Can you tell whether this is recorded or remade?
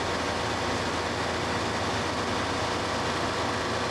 recorded